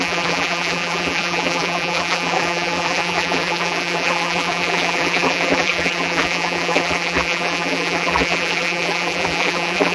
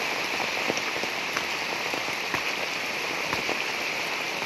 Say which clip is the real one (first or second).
second